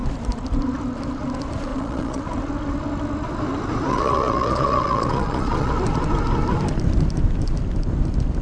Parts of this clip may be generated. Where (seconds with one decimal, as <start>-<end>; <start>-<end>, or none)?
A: 1.7-2.2; 3.9-5.7